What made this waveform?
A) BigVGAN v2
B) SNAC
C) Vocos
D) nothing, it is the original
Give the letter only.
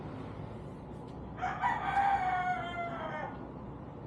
D